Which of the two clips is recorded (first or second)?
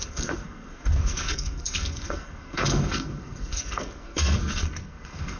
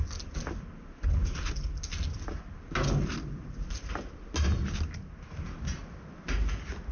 second